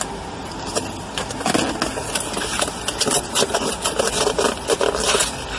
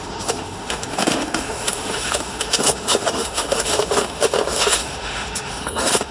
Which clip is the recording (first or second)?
first